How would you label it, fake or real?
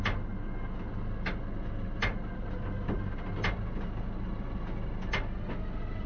real